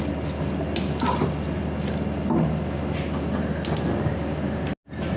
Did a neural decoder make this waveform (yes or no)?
no